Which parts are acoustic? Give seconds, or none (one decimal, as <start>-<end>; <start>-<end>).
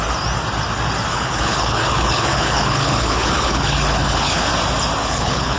0.0-1.1; 4.5-5.0